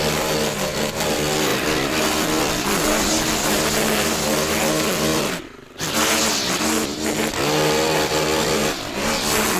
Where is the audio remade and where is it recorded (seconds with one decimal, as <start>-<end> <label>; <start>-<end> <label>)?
0.0-9.6 recorded